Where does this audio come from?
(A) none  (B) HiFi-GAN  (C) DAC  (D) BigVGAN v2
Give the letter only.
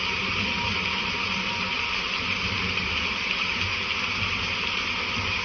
A